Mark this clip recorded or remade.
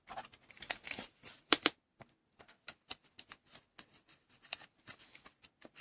recorded